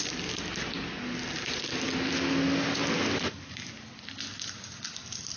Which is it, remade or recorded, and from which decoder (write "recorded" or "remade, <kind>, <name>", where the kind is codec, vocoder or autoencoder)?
recorded